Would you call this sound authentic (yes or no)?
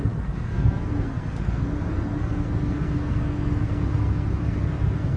no